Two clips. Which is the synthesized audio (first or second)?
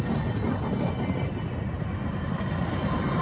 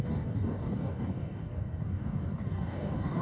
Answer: second